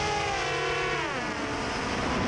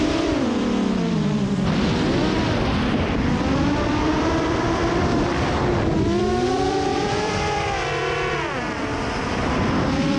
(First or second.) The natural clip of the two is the first